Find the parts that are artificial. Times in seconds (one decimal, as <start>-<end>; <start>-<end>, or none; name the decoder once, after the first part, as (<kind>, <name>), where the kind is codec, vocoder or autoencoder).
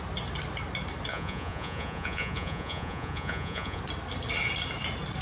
1.1-3.8 (vocoder, Vocos)